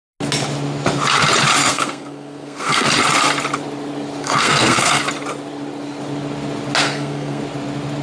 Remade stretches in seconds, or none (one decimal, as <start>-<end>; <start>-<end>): 1.6-2.9; 4.2-5.0; 6.8-7.4